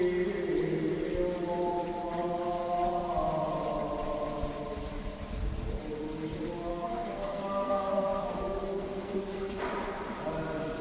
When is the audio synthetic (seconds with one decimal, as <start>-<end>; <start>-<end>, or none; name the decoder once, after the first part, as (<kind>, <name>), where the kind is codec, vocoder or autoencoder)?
6.7-9.5 (codec, SNAC)